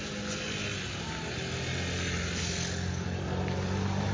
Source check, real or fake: real